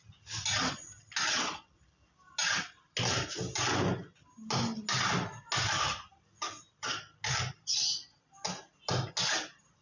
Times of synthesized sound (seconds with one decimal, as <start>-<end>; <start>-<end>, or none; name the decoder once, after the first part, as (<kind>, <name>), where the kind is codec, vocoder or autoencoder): none